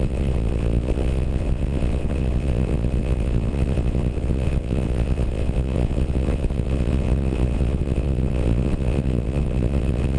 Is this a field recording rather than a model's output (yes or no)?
no